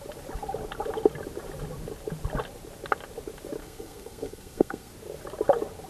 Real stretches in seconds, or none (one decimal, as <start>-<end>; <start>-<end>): 0.0-3.6; 4.9-5.9